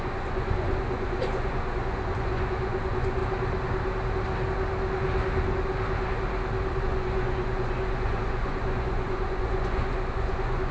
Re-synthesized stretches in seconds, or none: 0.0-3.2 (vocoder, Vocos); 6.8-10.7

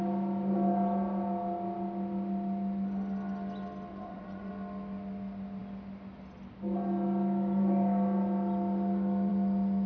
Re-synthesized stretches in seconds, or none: 3.9-4.5 (vocoder, Vocos)

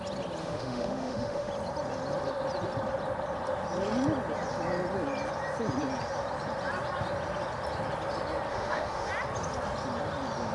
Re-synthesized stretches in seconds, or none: 0.4-1.5 (autoencoder, DAC-VAE); 8.5-9.1

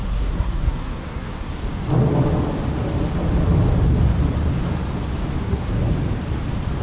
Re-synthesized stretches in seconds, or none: 0.0-1.6 (codec, SNAC); 5.4-5.9

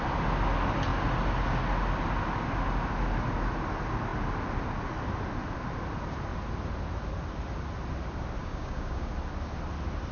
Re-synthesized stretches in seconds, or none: 8.4-9.1 (codec, DAC)

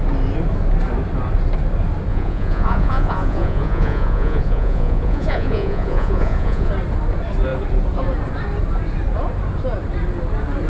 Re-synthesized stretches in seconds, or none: 2.1-6.7 (vocoder, Vocos)

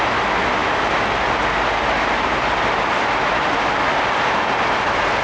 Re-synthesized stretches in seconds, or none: none

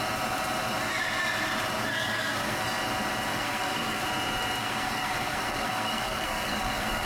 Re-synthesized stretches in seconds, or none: 1.9-2.6 (codec, SNAC); 3.3-4.0; 4.6-7.1